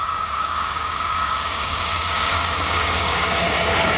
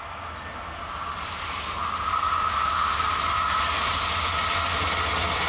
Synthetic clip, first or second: first